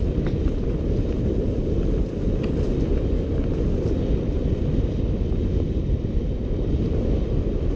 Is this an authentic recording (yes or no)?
yes